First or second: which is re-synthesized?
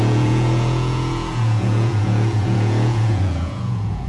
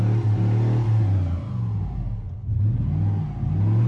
first